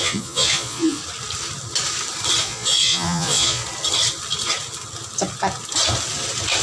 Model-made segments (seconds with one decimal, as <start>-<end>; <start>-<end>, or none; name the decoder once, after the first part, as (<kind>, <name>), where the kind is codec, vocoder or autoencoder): 0.0-1.0 (vocoder, Vocos); 2.4-3.6